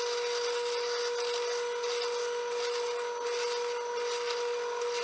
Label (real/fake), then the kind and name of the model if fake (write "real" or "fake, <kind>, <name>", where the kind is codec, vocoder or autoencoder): real